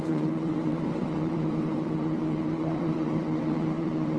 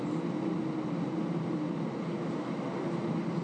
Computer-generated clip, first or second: first